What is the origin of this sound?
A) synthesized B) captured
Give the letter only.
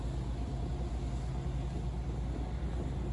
B